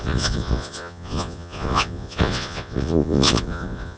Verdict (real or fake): fake